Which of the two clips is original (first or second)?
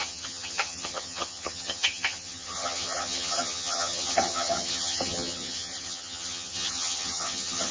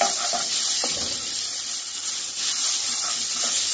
second